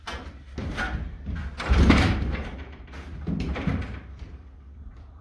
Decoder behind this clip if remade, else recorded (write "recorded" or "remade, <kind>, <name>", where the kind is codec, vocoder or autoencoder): remade, vocoder, BigVGAN v2